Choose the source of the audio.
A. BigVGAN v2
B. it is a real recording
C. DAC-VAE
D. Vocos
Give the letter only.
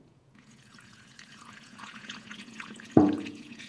D